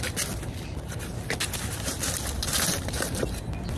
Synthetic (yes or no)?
no